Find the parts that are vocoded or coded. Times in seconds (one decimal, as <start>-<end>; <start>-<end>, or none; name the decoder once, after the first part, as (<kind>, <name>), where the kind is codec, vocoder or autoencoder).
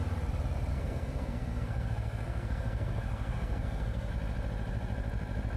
0.7-4.1 (codec, SNAC)